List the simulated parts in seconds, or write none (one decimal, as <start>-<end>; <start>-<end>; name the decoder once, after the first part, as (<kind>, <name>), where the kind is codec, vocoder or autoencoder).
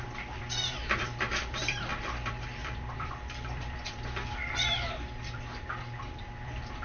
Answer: 0.0-6.8 (vocoder, BigVGAN v2)